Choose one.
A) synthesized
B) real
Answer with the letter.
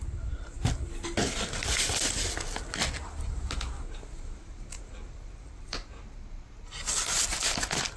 B